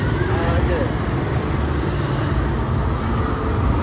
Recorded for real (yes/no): yes